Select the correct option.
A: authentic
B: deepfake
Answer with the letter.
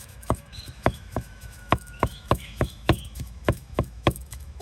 B